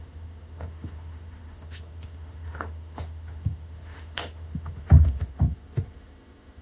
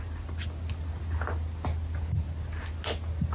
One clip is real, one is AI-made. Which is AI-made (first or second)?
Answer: first